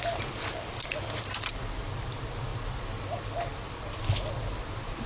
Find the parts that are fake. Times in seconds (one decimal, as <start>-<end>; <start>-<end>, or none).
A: none